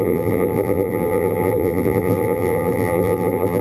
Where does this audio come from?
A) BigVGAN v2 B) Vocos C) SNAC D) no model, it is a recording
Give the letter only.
A